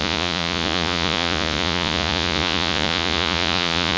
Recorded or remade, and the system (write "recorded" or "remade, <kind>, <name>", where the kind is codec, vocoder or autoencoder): remade, vocoder, Vocos